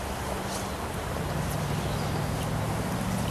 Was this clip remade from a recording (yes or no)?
no